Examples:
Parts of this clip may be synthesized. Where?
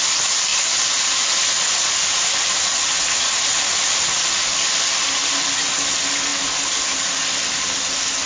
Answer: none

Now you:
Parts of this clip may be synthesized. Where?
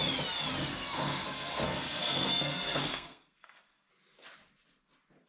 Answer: 0.7-3.9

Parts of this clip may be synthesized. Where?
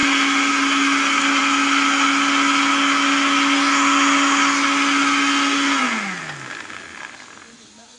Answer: none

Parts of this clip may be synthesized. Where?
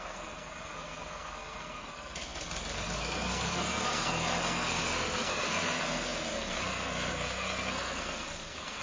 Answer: 0.0-8.8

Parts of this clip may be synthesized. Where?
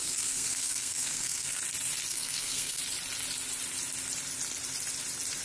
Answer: 0.0-1.6; 2.1-2.8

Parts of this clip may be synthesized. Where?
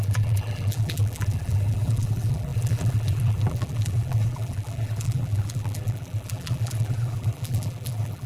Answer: 0.0-8.3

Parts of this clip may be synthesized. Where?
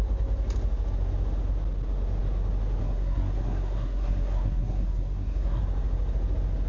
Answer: 2.8-5.6